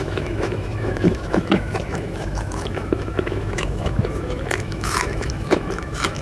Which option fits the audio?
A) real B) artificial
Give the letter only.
B